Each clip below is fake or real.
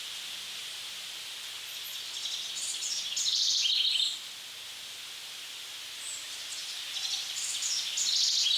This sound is real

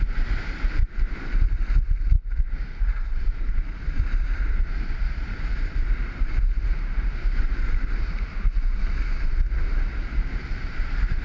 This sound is fake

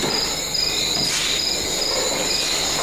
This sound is fake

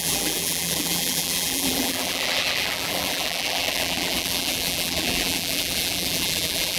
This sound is fake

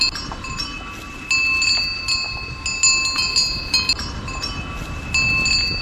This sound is real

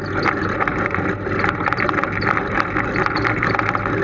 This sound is real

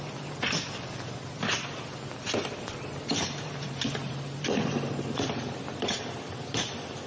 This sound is fake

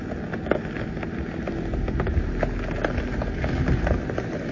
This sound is real